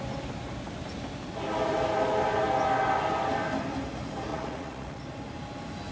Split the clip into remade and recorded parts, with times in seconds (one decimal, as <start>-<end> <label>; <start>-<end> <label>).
0.0-4.3 recorded; 4.3-5.0 remade; 5.0-5.9 recorded